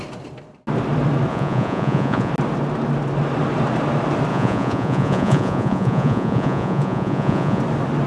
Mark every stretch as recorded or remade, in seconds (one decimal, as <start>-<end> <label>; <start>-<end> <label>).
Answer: 0.0-1.3 recorded; 1.3-2.3 remade; 2.3-4.3 recorded; 4.3-7.6 remade; 7.6-8.1 recorded